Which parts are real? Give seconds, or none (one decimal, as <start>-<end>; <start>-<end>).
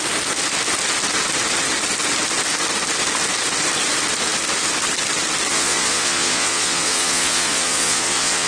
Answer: 0.0-5.5